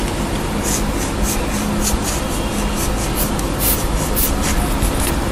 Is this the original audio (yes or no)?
yes